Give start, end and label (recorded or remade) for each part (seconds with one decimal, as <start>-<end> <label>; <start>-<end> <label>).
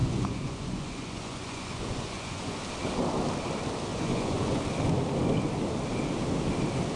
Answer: 0.0-2.6 remade; 2.6-3.9 recorded; 3.9-4.6 remade; 4.6-7.0 recorded